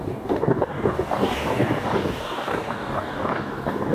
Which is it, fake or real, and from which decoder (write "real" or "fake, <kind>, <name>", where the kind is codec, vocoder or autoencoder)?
fake, codec, DAC